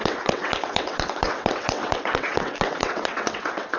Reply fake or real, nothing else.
fake